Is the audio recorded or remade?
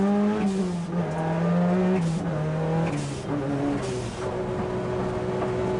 recorded